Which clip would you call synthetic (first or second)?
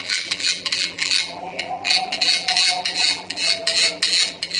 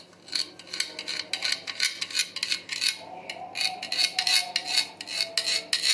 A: first